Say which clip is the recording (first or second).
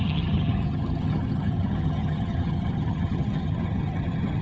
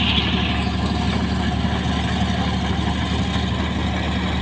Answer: second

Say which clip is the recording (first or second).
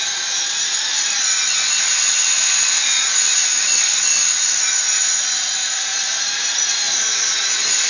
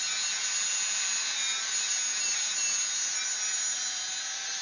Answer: second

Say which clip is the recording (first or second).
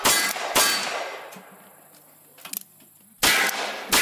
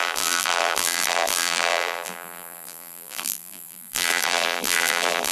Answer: first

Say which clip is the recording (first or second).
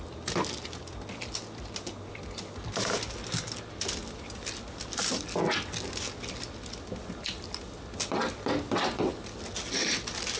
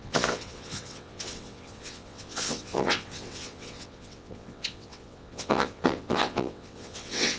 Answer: first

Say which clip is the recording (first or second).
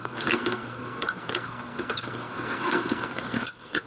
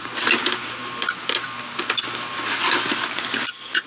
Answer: second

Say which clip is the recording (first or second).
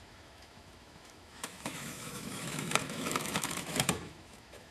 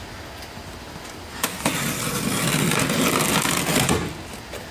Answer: second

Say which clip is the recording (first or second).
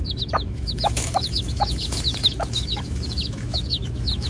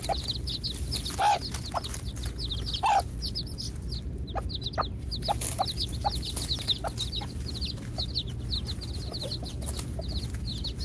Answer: second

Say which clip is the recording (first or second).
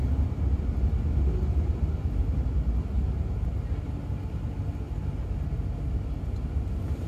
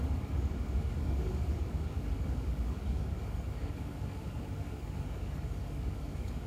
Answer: first